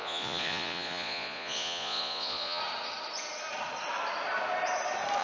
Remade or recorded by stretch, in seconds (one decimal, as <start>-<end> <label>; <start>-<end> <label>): 0.0-2.6 remade; 2.6-5.2 recorded